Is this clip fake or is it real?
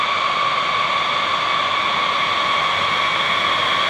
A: real